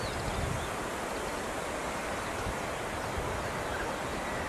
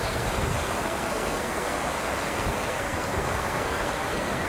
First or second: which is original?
first